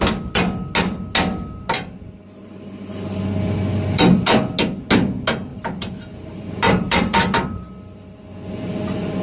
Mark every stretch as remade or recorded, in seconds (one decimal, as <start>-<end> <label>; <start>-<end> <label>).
0.0-5.5 recorded; 5.5-7.7 remade; 7.7-9.2 recorded